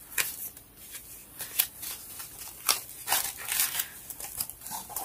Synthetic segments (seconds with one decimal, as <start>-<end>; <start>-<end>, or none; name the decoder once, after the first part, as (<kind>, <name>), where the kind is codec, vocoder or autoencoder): none